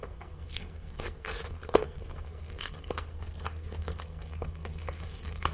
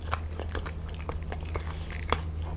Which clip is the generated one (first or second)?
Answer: first